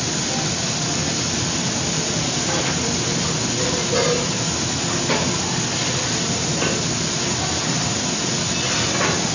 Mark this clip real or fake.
real